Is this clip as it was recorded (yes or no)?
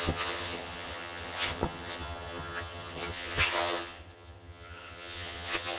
no